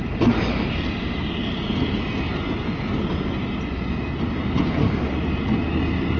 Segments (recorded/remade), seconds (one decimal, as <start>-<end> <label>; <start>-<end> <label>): 0.0-6.2 recorded